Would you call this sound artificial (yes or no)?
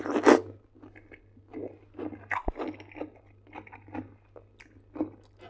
no